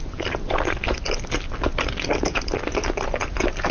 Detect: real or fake real